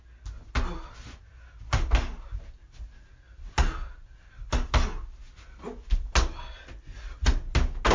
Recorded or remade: recorded